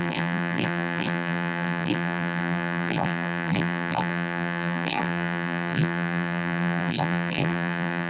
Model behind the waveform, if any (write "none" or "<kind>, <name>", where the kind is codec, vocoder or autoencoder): vocoder, BigVGAN v2